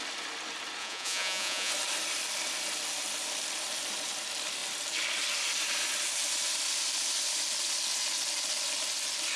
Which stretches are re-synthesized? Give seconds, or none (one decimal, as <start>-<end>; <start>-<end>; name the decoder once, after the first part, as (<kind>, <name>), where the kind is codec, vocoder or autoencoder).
0.8-1.7 (vocoder, Vocos)